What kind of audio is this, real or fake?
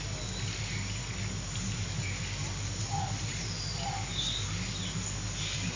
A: real